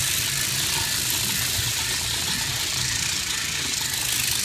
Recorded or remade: recorded